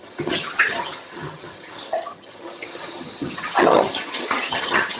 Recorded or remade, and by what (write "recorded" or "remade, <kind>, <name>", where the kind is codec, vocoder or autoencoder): remade, vocoder, HiFi-GAN